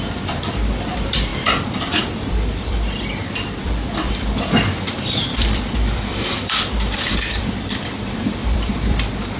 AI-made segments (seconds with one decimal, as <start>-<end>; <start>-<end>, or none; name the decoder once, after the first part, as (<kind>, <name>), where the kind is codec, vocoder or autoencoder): 0.0-9.4 (vocoder, BigVGAN v2)